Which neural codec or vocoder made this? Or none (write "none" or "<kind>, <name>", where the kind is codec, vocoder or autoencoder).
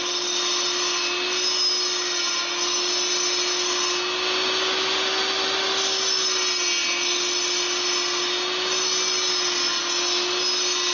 none